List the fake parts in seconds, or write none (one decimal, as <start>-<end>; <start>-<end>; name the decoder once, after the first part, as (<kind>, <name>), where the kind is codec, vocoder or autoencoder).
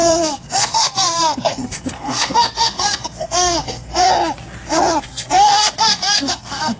0.0-4.1 (codec, SNAC); 4.7-6.8